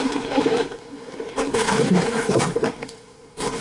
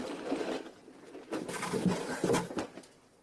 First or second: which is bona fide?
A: second